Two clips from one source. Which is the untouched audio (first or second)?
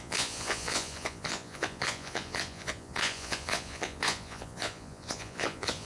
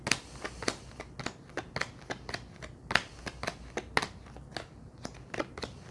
second